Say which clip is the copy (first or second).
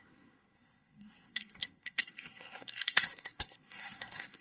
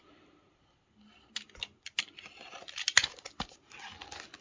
first